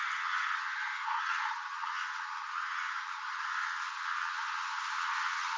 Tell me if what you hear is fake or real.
fake